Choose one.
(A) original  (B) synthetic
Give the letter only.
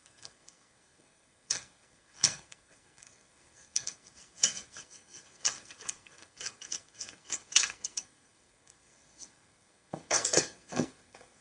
B